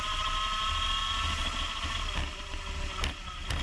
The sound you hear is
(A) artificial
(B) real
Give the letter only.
B